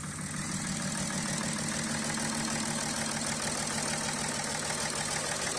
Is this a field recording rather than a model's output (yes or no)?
yes